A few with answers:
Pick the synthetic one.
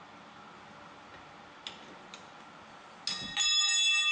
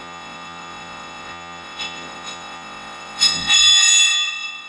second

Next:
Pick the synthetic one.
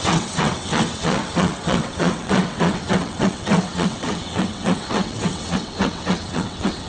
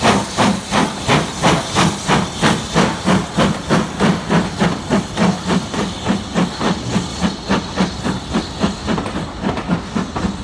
first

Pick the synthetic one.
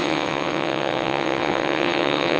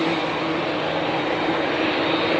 first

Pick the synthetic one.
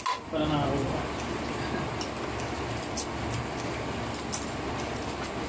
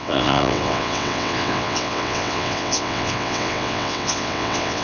second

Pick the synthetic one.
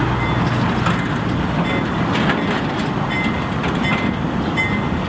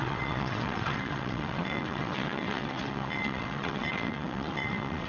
second